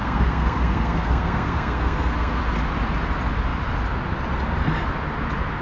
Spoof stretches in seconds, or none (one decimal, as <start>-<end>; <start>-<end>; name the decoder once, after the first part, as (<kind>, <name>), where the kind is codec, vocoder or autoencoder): 0.0-2.4 (codec, SNAC)